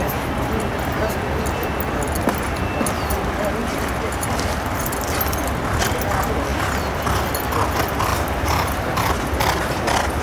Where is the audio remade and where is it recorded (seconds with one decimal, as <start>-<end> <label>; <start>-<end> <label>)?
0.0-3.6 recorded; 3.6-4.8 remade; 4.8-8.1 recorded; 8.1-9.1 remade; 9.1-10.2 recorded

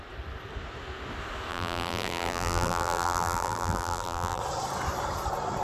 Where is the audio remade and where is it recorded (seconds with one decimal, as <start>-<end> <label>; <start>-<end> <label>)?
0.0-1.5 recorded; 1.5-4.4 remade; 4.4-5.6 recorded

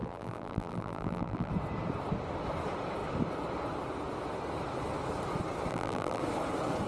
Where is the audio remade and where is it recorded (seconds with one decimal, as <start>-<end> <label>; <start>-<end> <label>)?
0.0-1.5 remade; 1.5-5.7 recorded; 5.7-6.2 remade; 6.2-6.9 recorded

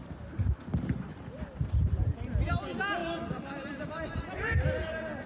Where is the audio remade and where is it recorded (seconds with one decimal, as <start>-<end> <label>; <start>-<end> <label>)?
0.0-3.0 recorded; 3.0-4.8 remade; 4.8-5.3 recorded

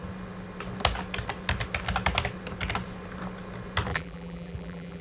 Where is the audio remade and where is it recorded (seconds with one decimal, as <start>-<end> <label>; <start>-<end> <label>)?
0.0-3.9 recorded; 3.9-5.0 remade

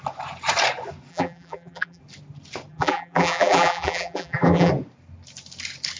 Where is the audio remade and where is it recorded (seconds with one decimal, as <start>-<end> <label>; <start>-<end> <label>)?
0.0-1.1 recorded; 1.1-2.0 remade; 2.0-2.7 recorded; 2.7-4.7 remade; 4.7-6.0 recorded

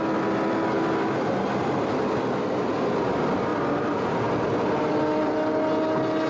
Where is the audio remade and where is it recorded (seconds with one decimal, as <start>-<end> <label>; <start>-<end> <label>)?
0.0-3.5 recorded; 3.5-4.7 remade; 4.7-6.3 recorded

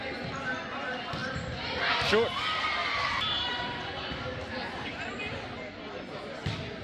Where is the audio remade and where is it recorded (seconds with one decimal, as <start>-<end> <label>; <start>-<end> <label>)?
0.0-1.2 recorded; 1.2-1.8 remade; 1.8-2.8 recorded; 2.8-5.8 remade; 5.8-6.8 recorded